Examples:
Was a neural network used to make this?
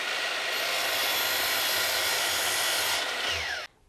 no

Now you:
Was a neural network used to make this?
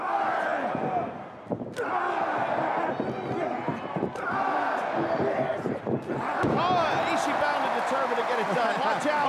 no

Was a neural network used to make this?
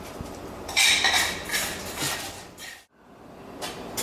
yes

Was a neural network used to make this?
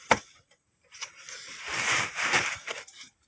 yes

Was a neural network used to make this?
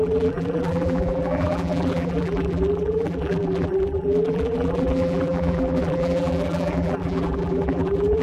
yes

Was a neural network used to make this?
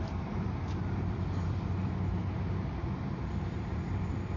yes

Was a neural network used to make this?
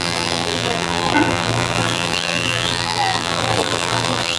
yes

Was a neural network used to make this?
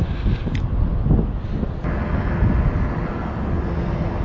no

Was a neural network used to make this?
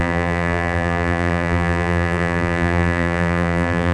yes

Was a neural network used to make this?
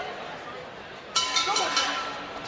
yes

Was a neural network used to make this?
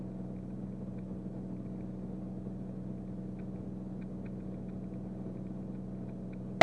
no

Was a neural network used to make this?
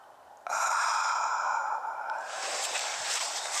yes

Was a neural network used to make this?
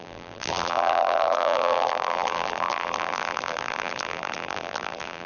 yes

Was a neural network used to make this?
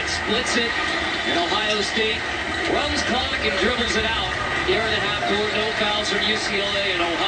yes